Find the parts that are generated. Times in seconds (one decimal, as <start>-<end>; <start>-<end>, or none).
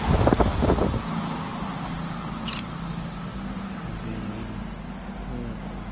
none